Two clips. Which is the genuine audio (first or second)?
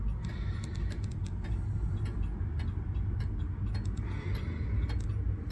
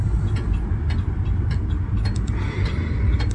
first